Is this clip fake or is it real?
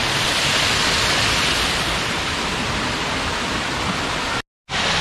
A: real